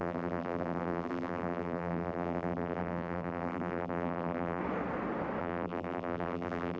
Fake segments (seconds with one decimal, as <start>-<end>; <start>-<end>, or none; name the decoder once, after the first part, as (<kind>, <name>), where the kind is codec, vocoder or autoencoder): 0.0-4.6 (vocoder, BigVGAN v2); 5.4-6.8